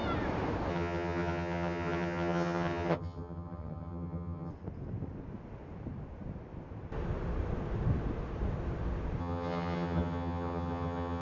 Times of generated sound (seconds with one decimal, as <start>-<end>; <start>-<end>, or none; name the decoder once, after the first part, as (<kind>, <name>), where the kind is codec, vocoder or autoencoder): 0.7-4.5 (vocoder, HiFi-GAN); 9.2-11.2